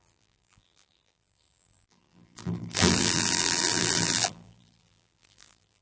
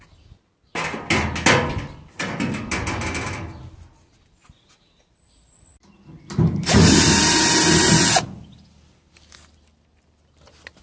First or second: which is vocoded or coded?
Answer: first